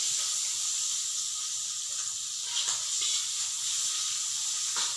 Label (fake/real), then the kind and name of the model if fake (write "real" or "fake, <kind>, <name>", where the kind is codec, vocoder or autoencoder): real